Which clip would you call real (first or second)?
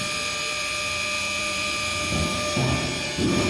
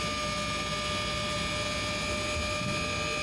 second